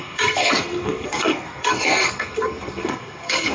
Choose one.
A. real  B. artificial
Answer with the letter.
B